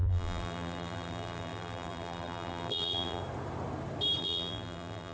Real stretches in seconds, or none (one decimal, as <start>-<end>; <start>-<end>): 3.2-4.2